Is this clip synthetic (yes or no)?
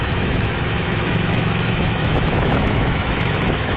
yes